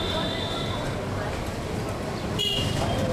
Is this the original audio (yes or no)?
yes